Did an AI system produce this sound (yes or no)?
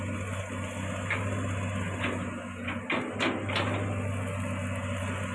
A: no